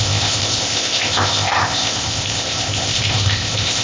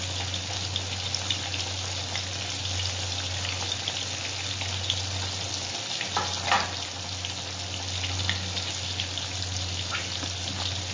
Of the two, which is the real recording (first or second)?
second